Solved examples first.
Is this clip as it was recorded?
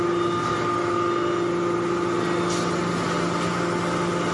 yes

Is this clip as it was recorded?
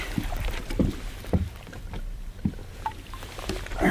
no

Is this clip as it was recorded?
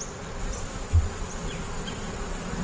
yes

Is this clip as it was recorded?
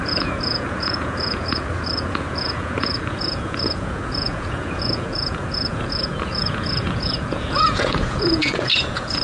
no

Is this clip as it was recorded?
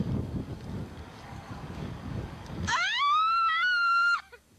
no